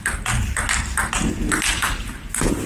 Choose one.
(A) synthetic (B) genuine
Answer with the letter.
B